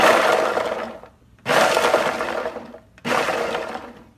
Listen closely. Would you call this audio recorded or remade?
recorded